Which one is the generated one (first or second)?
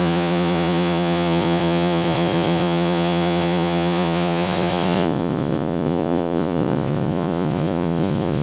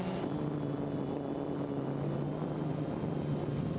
first